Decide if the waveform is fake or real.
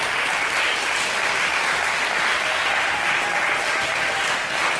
real